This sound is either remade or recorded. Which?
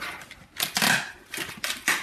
remade